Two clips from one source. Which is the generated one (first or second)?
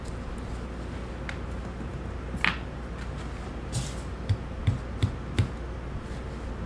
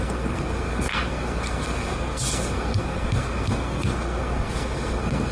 second